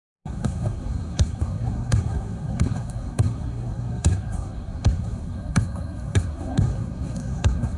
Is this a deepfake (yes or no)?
yes